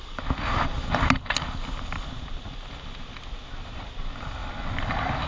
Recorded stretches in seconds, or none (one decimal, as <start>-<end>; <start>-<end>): 0.0-5.3